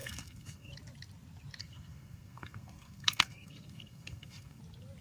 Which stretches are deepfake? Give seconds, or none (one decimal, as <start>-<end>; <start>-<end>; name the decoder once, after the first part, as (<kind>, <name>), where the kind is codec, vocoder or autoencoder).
0.0-0.7 (codec, SNAC); 1.6-4.6